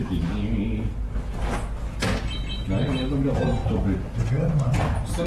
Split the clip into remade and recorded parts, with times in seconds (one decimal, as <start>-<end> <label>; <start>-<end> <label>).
0.0-5.3 recorded